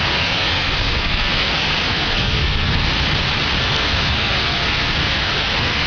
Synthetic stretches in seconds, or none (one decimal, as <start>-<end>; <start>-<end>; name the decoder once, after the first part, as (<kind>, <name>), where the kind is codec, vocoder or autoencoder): 0.0-2.9 (codec, SNAC); 3.6-5.9

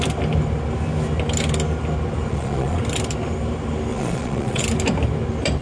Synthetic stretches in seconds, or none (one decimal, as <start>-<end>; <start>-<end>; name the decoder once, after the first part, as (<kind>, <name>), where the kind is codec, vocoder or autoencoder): 2.3-2.8 (vocoder, Vocos); 3.9-4.6